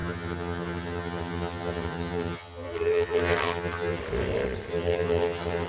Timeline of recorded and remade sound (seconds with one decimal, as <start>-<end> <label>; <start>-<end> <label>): 0.0-4.0 remade; 4.0-4.7 recorded; 4.7-5.7 remade